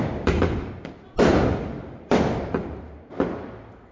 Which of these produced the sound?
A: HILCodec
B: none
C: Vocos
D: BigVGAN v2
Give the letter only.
D